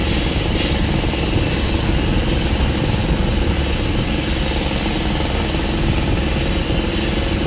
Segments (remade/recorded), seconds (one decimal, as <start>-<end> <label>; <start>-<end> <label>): 0.0-7.5 recorded